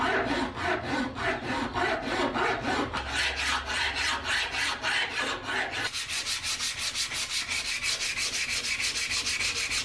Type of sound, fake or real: real